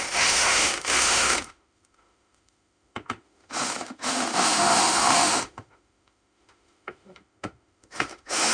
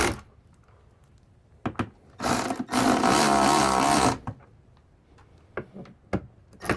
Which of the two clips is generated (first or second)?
first